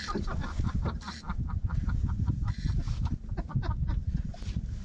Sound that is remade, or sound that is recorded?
recorded